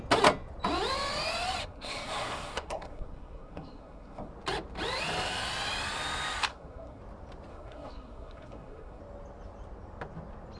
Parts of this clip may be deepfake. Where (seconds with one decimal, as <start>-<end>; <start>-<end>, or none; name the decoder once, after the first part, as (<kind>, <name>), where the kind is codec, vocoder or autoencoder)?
1.6-4.3 (codec, SNAC); 6.5-7.0; 7.5-9.0